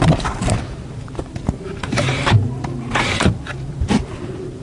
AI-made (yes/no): yes